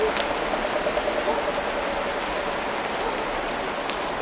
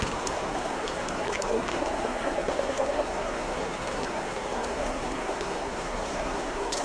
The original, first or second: first